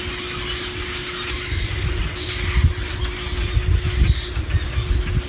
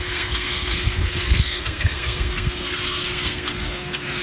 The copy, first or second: second